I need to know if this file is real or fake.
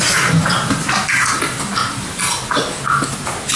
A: real